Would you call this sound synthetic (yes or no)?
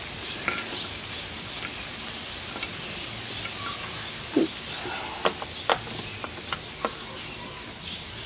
no